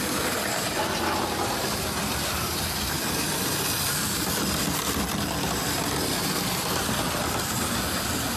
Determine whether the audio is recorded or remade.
recorded